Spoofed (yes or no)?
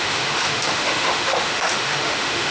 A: yes